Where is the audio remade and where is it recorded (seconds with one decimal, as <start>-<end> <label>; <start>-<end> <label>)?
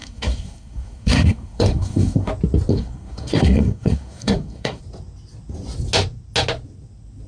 0.0-2.3 remade; 2.3-2.7 recorded; 2.7-4.8 remade; 4.8-7.3 recorded